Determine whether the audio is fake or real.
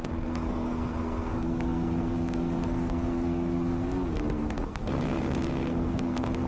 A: fake